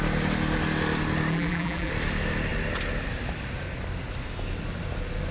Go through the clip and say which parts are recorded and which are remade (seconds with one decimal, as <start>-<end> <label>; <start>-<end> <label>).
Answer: 0.0-1.3 recorded; 1.3-1.9 remade; 1.9-5.3 recorded